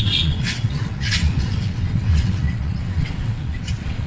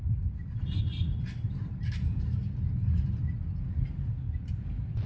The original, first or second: second